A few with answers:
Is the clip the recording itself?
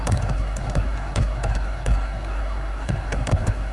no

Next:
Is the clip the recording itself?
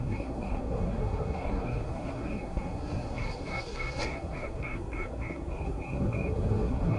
no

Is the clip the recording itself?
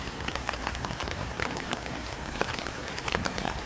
no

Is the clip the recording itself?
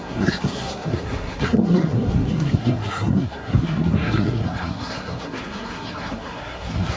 no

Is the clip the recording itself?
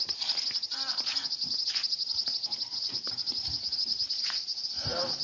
yes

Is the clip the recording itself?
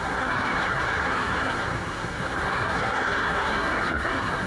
no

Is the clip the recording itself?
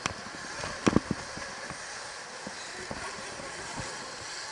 yes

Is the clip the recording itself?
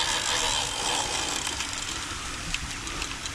yes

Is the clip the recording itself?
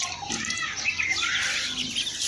yes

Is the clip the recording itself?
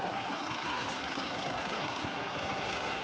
no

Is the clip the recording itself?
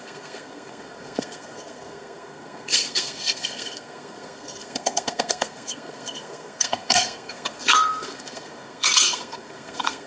no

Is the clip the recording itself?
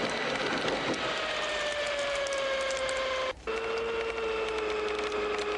yes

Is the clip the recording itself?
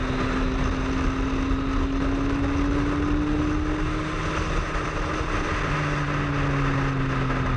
yes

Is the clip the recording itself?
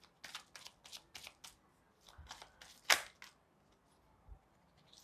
yes